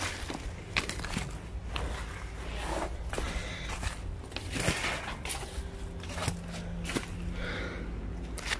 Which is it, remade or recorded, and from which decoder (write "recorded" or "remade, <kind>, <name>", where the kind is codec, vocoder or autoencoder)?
recorded